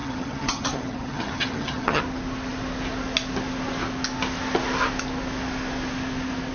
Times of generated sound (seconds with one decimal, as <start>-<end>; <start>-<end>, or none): 0.0-2.0